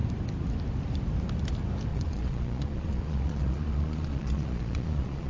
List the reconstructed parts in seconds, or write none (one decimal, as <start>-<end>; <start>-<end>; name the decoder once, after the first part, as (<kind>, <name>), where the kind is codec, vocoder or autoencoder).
1.9-5.3 (vocoder, Vocos)